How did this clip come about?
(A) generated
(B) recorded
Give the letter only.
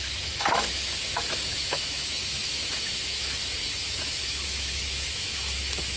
A